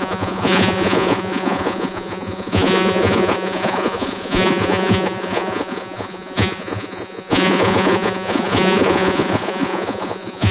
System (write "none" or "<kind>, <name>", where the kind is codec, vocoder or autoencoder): vocoder, Vocos